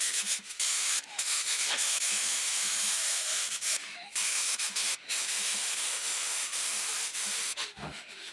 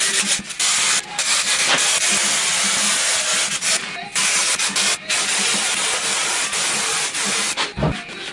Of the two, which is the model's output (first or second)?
first